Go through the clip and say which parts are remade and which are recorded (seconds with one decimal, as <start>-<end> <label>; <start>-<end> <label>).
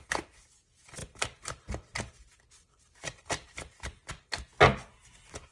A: 0.0-5.5 recorded